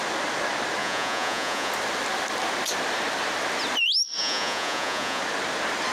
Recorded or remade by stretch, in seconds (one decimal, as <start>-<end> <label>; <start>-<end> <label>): 0.0-0.8 recorded; 0.8-1.7 remade; 1.7-4.2 recorded; 4.2-5.2 remade; 5.2-5.9 recorded